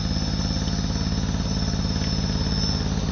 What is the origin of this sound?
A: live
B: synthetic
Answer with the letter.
A